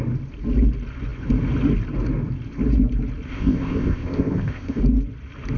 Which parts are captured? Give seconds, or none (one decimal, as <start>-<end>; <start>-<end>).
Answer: 0.0-3.3; 4.8-5.6